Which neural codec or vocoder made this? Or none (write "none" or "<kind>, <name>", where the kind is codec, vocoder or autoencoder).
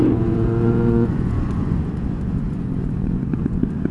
vocoder, Vocos